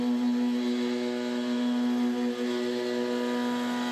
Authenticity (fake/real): real